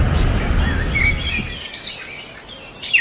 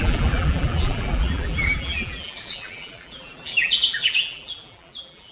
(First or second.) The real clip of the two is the first